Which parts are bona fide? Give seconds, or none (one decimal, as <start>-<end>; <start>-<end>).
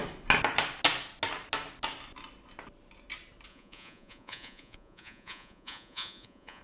0.0-3.5